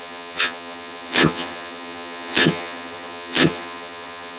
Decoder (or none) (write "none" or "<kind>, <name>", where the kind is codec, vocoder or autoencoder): vocoder, HiFi-GAN